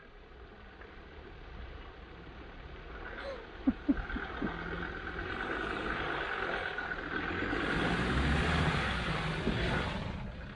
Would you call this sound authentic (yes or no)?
yes